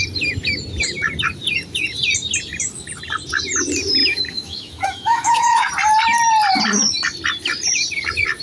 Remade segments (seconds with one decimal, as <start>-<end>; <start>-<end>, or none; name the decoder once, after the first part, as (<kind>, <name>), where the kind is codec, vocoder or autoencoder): 4.0-5.7 (autoencoder, DAC-VAE)

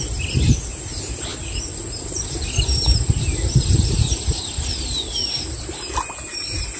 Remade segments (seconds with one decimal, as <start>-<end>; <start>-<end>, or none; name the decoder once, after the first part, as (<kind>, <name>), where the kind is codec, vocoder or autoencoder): none

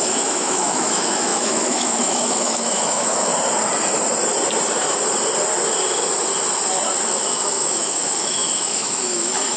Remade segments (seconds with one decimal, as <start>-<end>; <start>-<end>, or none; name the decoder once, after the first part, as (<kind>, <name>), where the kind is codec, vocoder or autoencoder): 0.0-3.3 (autoencoder, DAC-VAE); 7.1-9.6

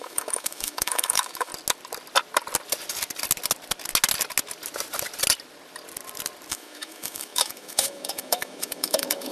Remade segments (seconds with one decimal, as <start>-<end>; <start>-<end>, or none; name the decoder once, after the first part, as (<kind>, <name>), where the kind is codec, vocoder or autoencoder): 0.0-1.5 (autoencoder, DAC-VAE); 6.5-9.3

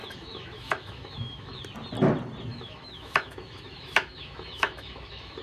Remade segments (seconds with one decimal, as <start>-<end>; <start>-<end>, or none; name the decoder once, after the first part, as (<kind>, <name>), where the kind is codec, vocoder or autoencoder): 0.0-1.6 (autoencoder, DAC-VAE); 2.5-5.4

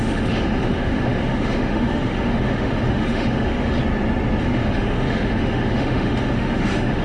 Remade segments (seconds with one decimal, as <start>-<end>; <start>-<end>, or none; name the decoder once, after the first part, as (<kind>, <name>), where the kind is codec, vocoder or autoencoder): 0.0-3.8 (autoencoder, DAC-VAE); 4.4-7.0